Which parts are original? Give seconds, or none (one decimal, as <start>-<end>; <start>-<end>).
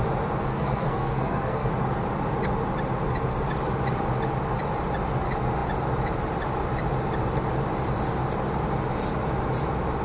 0.0-0.5; 1.7-10.0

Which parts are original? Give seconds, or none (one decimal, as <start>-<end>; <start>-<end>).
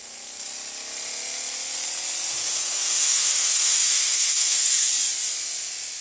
0.0-2.3; 4.9-6.0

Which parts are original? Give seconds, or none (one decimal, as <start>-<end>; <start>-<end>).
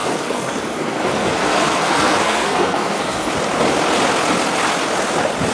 3.3-5.5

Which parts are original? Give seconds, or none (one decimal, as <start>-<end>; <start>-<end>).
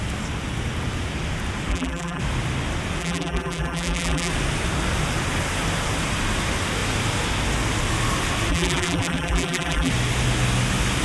0.0-1.7; 2.2-3.0; 4.3-8.5; 9.9-11.0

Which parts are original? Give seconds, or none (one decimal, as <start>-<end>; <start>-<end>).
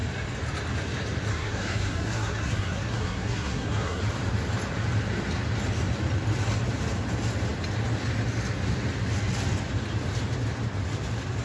0.0-1.3; 4.0-11.4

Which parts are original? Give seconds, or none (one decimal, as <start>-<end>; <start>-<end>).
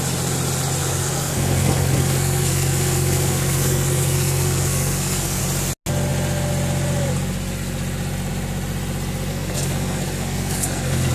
0.0-0.8; 5.4-9.3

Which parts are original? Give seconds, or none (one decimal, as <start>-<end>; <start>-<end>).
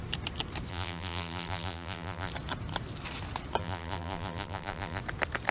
0.0-0.7; 2.3-3.6; 5.0-5.5